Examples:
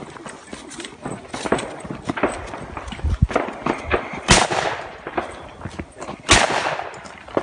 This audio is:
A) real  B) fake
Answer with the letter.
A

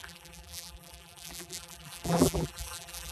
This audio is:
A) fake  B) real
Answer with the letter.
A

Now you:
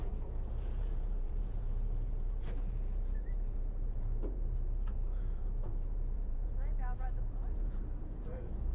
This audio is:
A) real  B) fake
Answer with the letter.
B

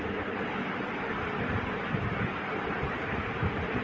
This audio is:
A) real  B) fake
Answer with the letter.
A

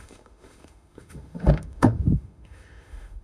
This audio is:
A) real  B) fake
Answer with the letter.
B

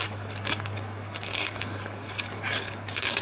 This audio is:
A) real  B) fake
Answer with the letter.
B